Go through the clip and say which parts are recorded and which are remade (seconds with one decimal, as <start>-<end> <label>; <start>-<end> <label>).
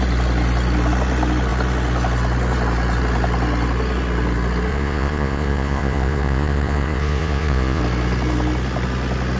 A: 0.0-4.7 recorded; 4.7-7.8 remade; 7.8-9.4 recorded